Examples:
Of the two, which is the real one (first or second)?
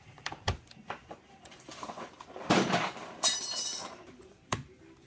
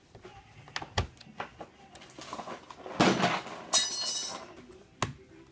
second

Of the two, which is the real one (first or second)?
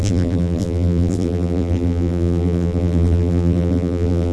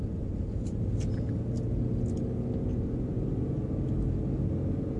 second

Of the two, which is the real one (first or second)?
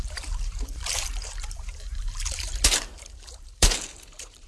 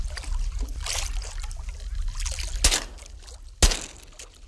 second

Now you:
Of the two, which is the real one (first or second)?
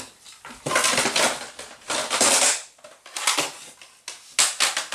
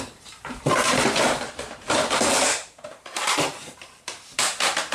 first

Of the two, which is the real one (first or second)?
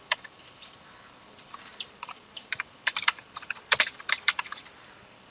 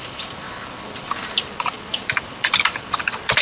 second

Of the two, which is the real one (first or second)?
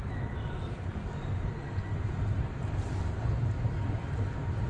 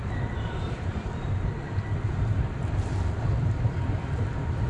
first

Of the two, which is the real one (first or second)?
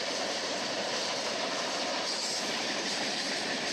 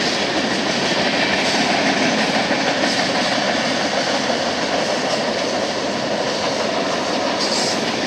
second